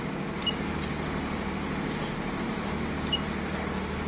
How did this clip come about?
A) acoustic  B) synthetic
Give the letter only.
A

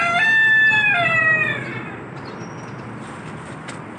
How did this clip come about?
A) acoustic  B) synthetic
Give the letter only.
A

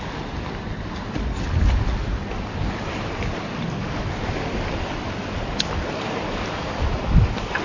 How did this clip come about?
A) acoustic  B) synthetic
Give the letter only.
A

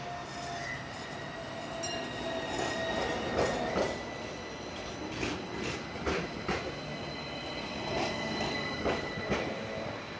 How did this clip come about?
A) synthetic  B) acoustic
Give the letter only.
B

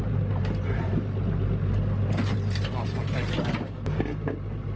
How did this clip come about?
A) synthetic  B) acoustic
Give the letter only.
B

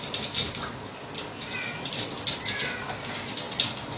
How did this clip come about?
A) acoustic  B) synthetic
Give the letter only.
A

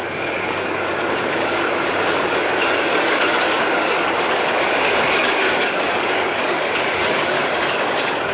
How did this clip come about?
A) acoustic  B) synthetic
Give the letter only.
B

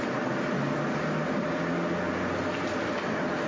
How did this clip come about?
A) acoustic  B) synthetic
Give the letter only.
A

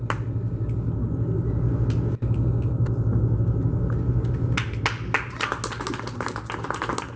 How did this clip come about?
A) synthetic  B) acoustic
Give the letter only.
B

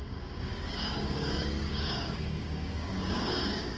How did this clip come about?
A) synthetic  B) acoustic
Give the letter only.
A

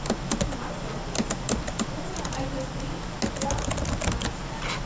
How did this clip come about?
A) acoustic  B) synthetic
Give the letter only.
A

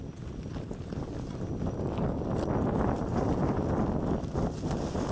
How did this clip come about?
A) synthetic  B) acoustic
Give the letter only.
B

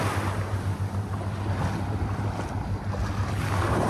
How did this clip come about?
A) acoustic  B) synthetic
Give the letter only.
A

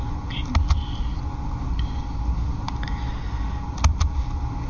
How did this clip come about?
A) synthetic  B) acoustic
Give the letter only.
B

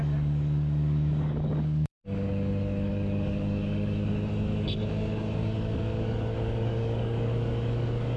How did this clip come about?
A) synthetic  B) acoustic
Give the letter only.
A